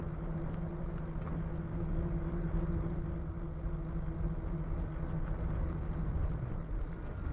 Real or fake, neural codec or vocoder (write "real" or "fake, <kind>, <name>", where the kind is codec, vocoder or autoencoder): real